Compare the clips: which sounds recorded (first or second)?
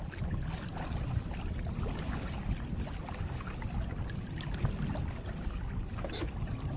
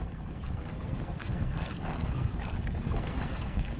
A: first